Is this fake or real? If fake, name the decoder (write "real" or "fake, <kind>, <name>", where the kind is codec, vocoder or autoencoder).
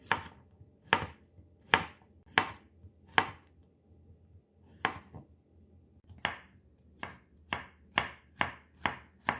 real